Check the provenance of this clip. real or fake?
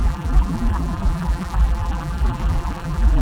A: fake